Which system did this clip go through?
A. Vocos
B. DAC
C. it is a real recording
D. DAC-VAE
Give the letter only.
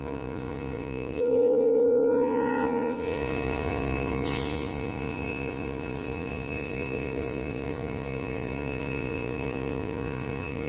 A